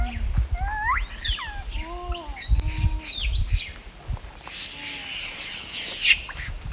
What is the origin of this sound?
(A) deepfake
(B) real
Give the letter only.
B